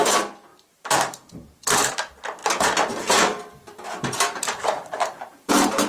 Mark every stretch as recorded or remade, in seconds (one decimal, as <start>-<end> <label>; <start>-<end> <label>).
0.0-0.5 recorded; 0.5-1.9 remade; 1.9-2.4 recorded; 2.4-5.5 remade; 5.5-5.9 recorded